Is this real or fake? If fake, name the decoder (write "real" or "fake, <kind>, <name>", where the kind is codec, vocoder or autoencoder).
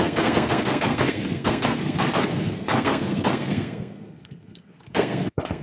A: fake, codec, SNAC